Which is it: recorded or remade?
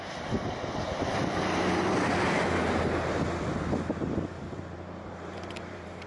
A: remade